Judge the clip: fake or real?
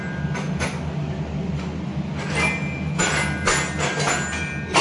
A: real